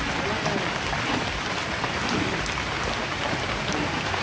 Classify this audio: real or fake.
real